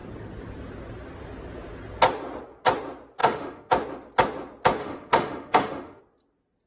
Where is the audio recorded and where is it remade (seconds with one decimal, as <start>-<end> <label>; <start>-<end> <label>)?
0.0-3.2 recorded; 3.2-3.7 remade; 3.7-4.8 recorded; 4.8-6.0 remade; 6.0-6.7 recorded